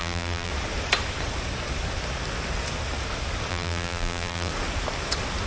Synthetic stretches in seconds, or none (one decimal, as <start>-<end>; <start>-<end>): 0.0-0.5; 3.5-4.5